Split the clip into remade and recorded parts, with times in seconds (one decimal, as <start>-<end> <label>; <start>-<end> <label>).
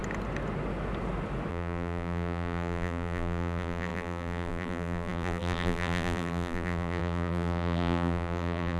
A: 0.0-1.5 recorded; 1.5-8.8 remade